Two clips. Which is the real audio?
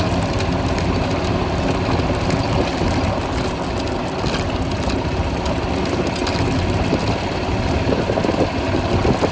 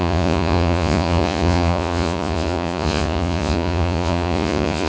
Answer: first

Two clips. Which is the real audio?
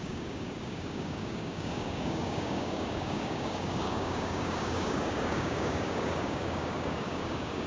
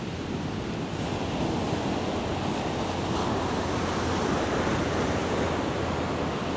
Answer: second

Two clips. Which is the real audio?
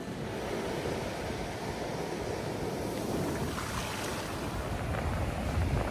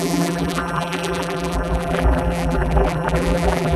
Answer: first